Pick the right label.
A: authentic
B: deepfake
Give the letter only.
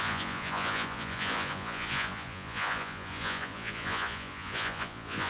B